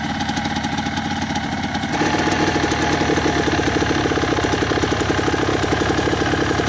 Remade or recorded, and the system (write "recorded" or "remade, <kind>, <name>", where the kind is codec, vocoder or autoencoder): recorded